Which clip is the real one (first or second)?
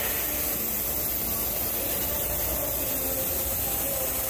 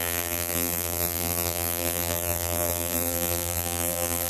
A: first